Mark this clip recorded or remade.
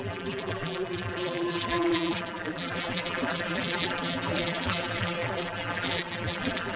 remade